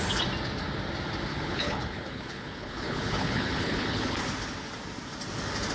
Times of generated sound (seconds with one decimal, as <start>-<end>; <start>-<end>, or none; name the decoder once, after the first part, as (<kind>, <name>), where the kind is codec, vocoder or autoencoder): 1.3-4.2 (codec, HILCodec)